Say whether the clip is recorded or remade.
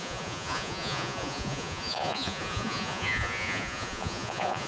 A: remade